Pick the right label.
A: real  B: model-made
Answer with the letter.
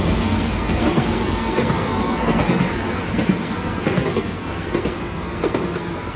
B